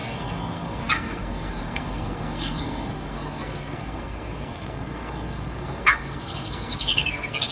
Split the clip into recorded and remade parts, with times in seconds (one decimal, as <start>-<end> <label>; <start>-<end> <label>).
0.0-7.5 remade